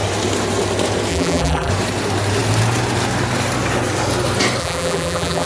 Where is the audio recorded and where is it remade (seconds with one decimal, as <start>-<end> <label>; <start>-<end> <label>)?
0.0-1.1 recorded; 1.1-1.7 remade; 1.7-4.6 recorded; 4.6-5.5 remade

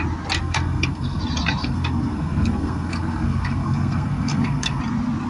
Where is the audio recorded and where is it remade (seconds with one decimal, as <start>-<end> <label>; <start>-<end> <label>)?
0.0-0.4 recorded; 0.4-1.2 remade; 1.2-1.6 recorded; 1.6-4.8 remade; 4.8-5.3 recorded